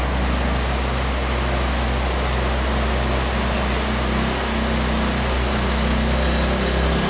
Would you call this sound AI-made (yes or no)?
no